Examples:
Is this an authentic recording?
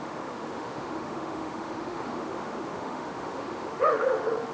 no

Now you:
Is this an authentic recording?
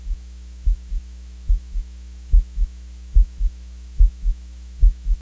no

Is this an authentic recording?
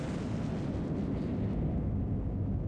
yes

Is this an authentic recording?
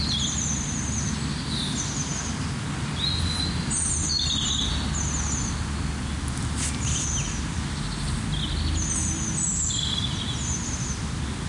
yes